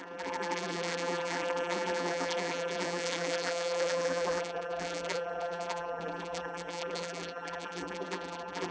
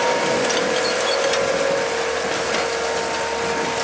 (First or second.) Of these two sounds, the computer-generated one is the first